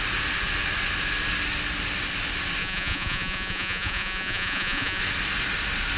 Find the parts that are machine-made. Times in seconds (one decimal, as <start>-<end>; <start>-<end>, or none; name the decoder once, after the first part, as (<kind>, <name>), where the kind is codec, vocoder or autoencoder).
2.6-5.0 (vocoder, Vocos)